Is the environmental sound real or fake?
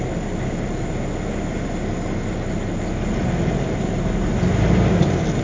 real